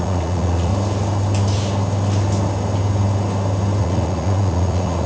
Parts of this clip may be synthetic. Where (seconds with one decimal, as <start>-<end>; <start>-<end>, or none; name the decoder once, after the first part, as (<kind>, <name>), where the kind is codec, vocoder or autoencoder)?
0.0-0.7 (vocoder, Vocos); 3.8-5.1